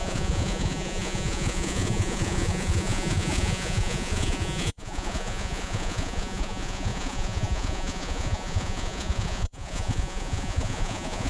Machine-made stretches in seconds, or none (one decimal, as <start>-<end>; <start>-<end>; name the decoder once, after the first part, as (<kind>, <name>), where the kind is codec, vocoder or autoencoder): 0.0-11.3 (vocoder, Vocos)